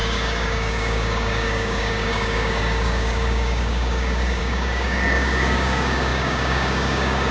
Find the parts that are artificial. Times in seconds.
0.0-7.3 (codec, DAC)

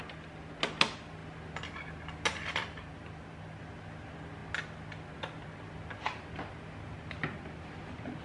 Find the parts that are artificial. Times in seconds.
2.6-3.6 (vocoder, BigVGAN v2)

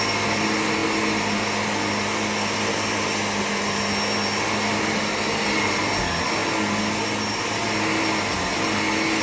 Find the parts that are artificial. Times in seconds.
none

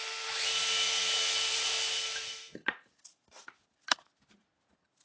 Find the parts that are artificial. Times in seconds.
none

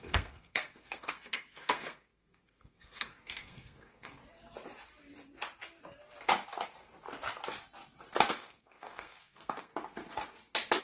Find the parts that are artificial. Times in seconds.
0.0-4.2 (codec, SNAC); 8.3-9.7

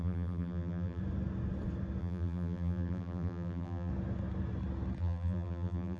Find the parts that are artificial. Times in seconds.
0.0-1.0 (vocoder, BigVGAN v2); 2.0-3.9; 5.0-6.0

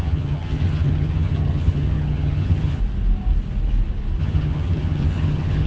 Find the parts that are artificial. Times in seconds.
0.0-2.8 (vocoder, HiFi-GAN); 4.2-5.7

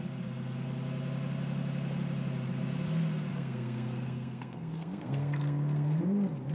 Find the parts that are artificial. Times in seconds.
3.3-6.0 (codec, SNAC)